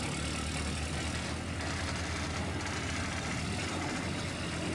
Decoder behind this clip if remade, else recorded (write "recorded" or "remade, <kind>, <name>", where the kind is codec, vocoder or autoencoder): recorded